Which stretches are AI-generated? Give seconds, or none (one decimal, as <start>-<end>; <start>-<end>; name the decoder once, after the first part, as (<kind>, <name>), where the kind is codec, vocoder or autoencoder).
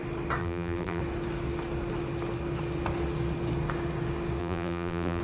0.4-1.0 (vocoder, BigVGAN v2); 4.4-5.2